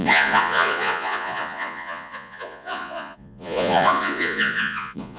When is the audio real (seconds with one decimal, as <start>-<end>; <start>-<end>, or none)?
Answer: none